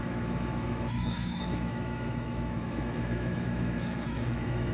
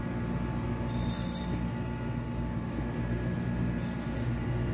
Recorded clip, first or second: second